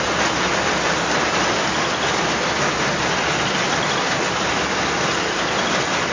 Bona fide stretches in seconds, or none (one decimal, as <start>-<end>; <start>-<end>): 0.0-6.1